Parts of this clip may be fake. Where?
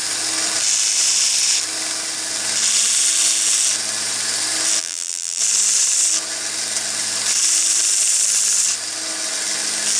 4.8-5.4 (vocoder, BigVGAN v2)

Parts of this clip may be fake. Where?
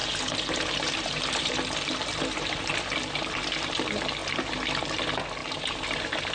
0.0-1.5 (vocoder, BigVGAN v2); 2.0-2.7; 5.4-6.3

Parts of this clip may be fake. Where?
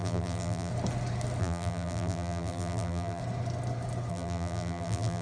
0.0-0.7 (vocoder, BigVGAN v2); 1.4-3.2; 4.1-5.2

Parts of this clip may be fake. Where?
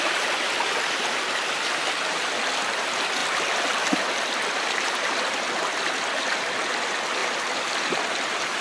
3.2-6.5 (vocoder, BigVGAN v2); 7.2-8.0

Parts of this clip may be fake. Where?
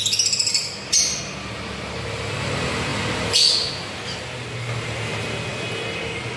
0.6-1.2 (vocoder, BigVGAN v2)